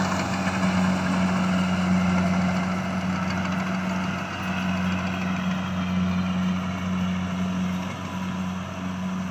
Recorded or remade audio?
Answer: recorded